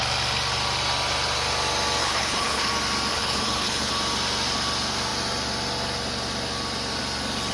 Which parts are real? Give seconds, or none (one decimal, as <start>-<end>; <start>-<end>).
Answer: 0.0-2.0; 2.7-3.1; 3.9-7.5